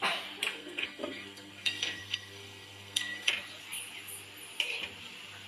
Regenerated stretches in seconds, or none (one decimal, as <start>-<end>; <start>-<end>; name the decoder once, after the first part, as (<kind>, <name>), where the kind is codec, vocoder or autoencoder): 0.5-3.3 (codec, SNAC)